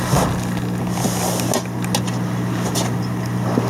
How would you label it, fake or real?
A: real